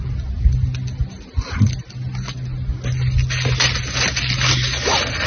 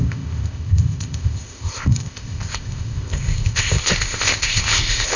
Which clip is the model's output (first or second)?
second